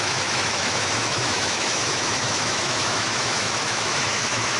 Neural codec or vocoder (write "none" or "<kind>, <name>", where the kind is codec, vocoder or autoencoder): autoencoder, DAC-VAE